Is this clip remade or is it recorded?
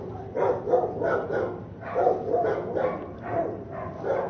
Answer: recorded